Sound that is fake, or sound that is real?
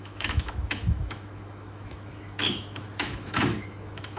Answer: fake